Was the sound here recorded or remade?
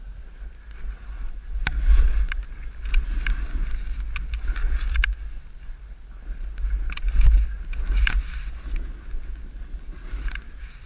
recorded